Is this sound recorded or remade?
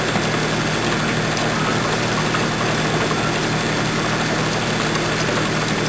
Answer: recorded